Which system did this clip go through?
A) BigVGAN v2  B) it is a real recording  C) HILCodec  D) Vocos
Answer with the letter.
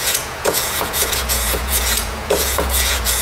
D